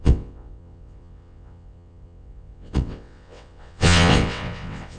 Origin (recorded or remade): remade